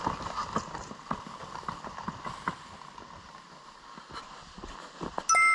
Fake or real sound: real